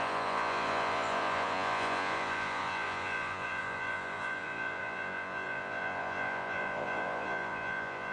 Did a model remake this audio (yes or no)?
yes